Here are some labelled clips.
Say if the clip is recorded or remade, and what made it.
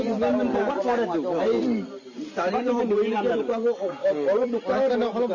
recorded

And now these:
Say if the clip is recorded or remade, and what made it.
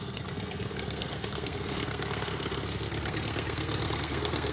remade, codec, SNAC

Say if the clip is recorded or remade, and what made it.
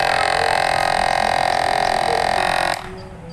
recorded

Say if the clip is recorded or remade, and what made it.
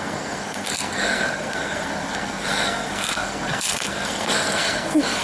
remade, codec, SNAC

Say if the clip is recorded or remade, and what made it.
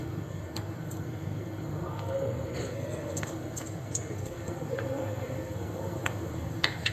remade, codec, SNAC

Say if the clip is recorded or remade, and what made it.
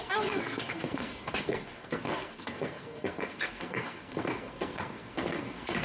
remade, codec, SNAC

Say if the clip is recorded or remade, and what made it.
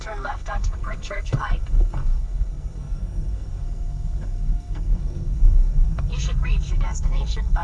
remade, codec, SNAC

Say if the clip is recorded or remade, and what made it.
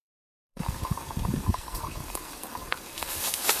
remade, codec, SNAC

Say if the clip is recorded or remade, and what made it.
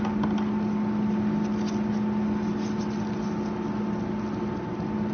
recorded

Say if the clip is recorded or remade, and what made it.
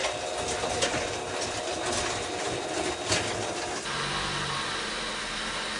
recorded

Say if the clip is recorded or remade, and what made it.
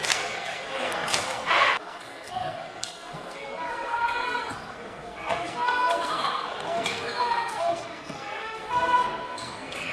remade, codec, SNAC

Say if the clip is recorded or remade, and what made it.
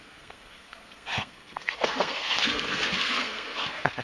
remade, codec, SNAC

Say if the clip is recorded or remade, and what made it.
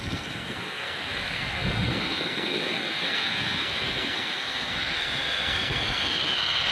remade, codec, SNAC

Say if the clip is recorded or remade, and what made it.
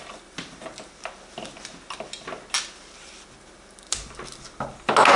recorded